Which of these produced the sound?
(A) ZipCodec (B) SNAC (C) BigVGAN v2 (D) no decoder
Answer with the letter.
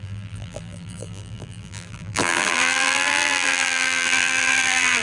C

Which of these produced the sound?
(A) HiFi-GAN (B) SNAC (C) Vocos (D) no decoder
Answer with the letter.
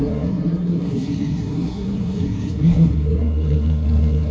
B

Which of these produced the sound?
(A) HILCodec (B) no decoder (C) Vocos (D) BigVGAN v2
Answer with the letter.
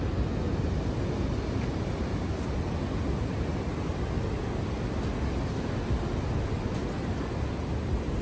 B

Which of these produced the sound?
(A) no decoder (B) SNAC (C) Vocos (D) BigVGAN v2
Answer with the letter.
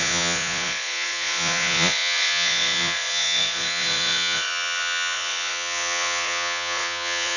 C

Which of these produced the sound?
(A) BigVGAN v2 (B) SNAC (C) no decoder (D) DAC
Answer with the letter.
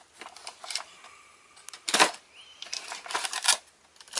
C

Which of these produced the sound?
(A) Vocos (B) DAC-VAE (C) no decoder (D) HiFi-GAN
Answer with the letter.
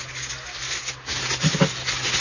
C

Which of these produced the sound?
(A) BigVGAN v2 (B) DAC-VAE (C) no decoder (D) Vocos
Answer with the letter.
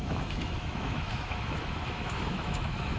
B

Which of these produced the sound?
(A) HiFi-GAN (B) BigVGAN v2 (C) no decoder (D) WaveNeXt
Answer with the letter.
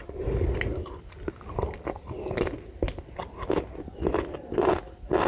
C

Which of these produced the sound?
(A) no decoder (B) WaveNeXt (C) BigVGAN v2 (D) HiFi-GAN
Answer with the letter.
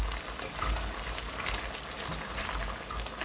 A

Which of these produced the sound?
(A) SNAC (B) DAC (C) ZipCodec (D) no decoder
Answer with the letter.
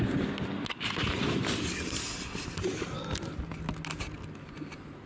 D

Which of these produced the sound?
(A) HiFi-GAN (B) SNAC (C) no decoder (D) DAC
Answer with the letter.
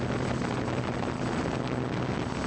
C